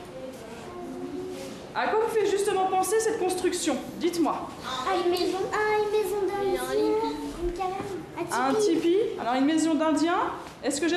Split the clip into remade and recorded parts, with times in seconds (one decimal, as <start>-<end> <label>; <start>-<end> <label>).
0.0-11.0 recorded